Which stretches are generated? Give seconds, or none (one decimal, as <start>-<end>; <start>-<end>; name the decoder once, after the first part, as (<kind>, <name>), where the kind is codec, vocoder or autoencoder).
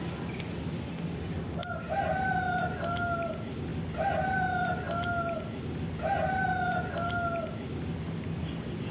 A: 3.7-4.4 (vocoder, BigVGAN v2)